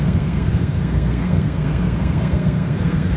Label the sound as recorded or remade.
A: remade